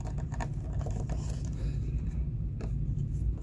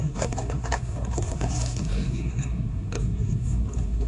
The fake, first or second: second